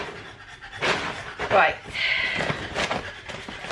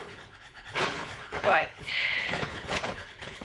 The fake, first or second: second